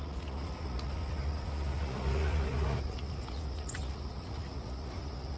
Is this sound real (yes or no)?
no